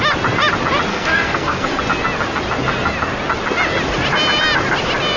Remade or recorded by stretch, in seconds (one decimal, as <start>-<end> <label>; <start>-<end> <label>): 0.0-0.9 recorded; 0.9-1.8 remade; 1.8-5.2 recorded